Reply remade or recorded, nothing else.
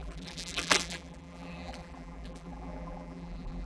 remade